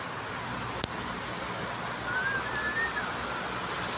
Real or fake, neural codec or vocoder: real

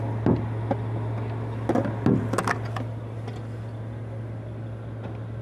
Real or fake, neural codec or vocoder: real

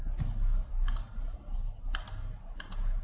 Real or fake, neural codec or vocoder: real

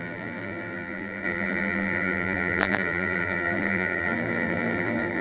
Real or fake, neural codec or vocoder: fake, vocoder, BigVGAN v2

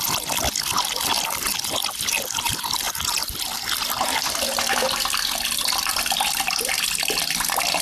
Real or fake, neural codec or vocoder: fake, vocoder, BigVGAN v2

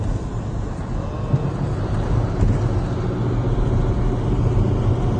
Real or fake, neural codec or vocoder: real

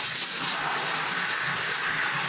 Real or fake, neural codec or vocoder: real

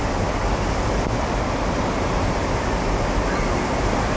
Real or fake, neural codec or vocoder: real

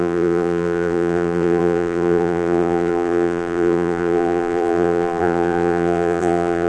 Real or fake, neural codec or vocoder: fake, vocoder, BigVGAN v2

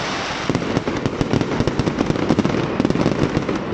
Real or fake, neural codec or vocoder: real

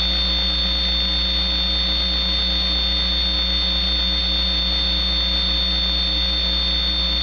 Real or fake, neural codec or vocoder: real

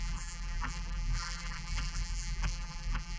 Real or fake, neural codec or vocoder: fake, vocoder, BigVGAN v2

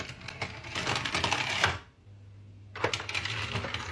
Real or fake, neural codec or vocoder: real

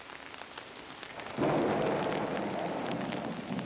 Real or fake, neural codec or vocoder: real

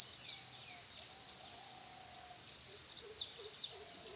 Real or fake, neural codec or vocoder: real